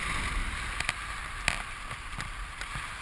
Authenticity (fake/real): real